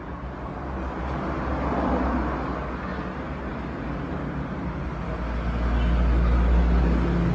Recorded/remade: recorded